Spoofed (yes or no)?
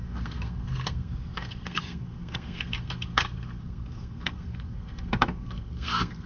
yes